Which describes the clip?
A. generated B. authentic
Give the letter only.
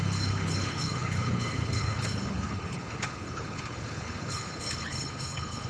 A